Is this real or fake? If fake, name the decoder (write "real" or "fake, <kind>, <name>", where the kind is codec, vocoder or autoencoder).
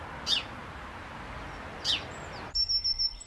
real